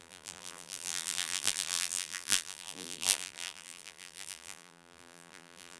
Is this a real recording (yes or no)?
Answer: no